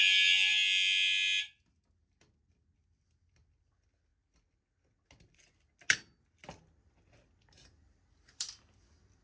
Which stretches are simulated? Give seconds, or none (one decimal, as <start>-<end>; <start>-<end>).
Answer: none